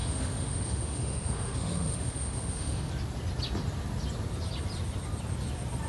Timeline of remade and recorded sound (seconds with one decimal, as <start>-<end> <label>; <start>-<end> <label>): 0.0-2.9 remade; 2.9-5.9 recorded